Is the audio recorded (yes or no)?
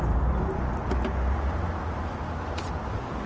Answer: yes